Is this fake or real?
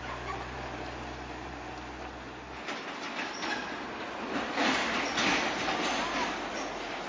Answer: real